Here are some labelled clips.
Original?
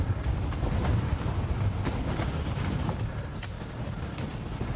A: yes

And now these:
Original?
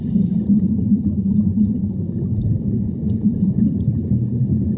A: no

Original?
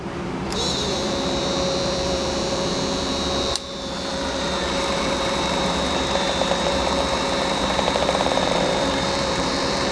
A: no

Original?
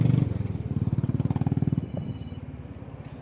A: yes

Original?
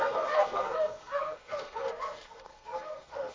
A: no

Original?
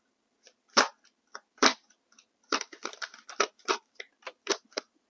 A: no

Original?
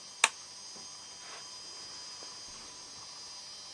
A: yes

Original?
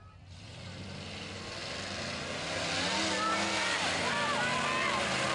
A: yes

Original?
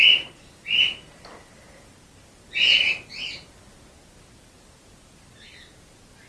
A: yes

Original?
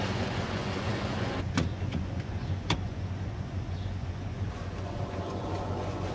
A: no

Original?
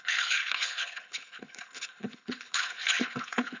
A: no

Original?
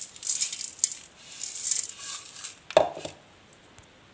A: yes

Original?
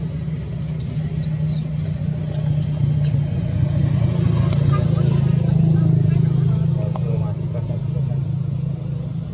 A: yes